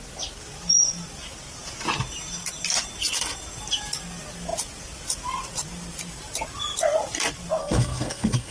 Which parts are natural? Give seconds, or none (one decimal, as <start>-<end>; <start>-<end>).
0.0-7.6